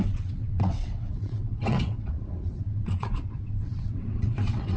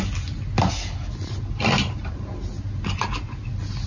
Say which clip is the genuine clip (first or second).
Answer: second